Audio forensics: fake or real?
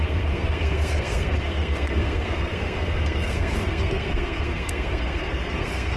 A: fake